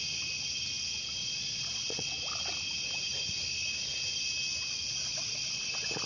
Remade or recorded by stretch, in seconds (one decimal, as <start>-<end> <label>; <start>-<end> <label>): 0.0-1.2 recorded; 1.2-2.1 remade; 2.1-5.1 recorded; 5.1-5.6 remade; 5.6-6.1 recorded